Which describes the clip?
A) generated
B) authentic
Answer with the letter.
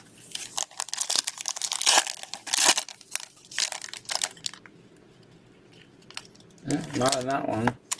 B